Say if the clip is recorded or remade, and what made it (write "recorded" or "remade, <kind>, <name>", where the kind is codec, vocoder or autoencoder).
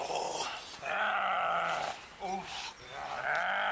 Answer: recorded